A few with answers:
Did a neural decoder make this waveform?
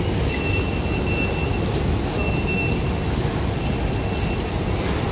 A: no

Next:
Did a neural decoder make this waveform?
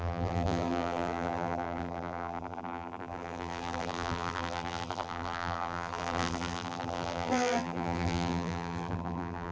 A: yes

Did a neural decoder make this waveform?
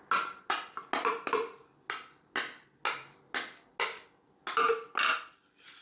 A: no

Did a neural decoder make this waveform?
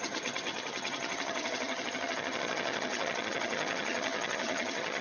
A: yes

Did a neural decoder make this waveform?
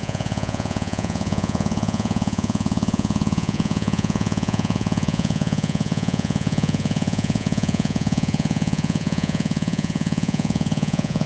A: yes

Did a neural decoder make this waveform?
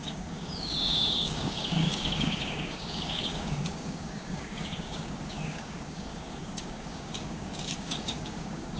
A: yes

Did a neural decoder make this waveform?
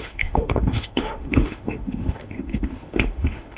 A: yes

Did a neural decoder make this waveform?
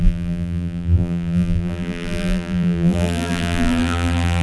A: yes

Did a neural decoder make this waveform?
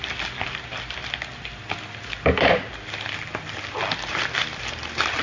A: no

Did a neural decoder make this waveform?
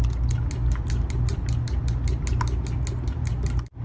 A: no